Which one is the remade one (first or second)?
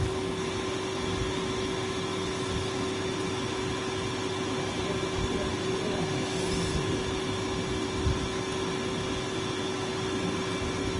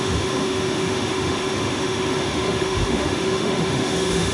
second